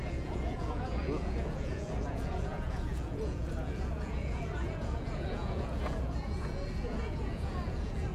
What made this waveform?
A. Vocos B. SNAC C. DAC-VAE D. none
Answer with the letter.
A